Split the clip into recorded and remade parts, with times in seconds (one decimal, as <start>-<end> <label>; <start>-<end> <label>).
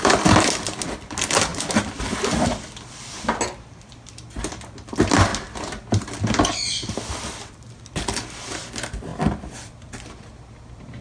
0.0-11.0 recorded